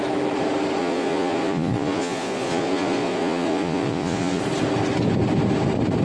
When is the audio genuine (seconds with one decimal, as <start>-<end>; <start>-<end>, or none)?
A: 0.0-0.8; 4.4-6.0